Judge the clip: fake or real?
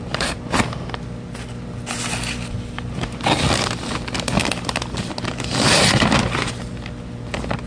real